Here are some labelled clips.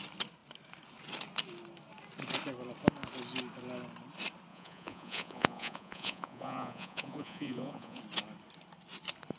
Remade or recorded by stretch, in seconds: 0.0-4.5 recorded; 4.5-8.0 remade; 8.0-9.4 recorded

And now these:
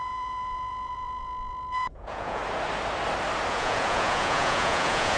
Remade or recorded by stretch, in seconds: 0.0-2.4 remade; 2.4-3.5 recorded; 3.5-5.2 remade

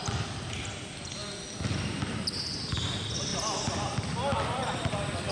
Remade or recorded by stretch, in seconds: 0.0-5.3 recorded

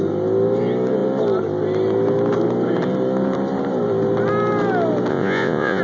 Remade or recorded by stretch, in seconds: 0.0-5.1 recorded; 5.1-5.8 remade

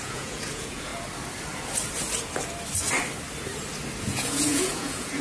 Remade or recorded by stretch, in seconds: 0.0-0.9 remade; 0.9-4.0 recorded; 4.0-5.2 remade